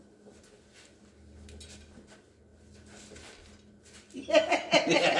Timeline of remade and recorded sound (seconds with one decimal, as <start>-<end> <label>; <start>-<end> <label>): 0.0-5.2 recorded